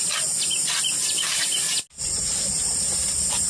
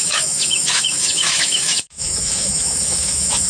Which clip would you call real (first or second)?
first